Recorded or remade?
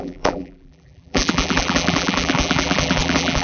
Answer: remade